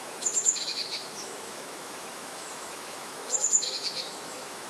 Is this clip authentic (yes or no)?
no